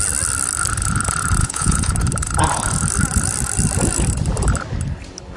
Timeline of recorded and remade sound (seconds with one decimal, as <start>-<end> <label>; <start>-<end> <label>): 0.0-1.4 recorded; 1.4-1.9 remade; 1.9-5.4 recorded